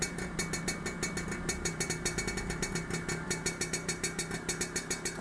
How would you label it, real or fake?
real